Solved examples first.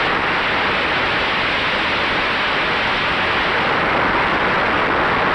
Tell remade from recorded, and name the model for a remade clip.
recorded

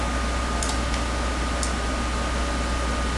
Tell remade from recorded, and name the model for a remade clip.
recorded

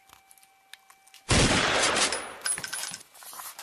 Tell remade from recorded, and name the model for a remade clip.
recorded